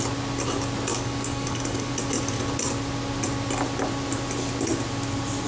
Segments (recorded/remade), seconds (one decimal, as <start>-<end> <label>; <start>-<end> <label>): 0.0-0.9 recorded; 0.9-1.9 remade; 1.9-5.5 recorded